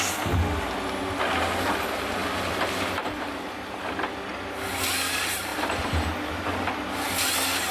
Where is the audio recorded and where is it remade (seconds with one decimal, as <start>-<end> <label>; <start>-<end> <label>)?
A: 0.0-2.2 recorded; 2.2-4.3 remade; 4.3-5.5 recorded; 5.5-6.1 remade; 6.1-7.7 recorded